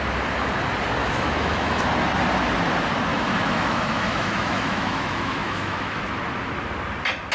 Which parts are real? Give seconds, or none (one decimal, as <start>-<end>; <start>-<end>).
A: 0.0-1.0; 1.8-3.1; 6.0-7.3